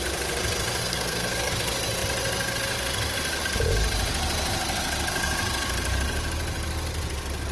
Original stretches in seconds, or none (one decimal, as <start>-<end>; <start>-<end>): 0.0-0.8; 1.5-7.5